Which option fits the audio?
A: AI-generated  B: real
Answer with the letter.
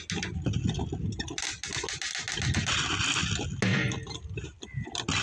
B